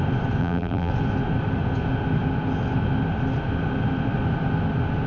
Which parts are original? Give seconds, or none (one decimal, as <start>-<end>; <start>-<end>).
0.0-0.4; 0.9-5.1